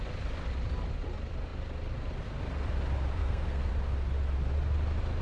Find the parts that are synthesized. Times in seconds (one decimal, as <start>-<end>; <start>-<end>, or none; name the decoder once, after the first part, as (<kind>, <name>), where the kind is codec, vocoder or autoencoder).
3.2-3.7 (codec, SNAC)